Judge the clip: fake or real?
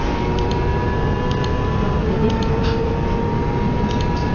real